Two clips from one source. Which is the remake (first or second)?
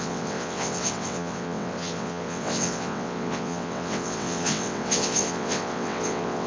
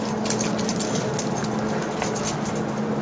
first